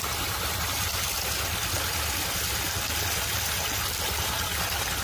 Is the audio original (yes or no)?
yes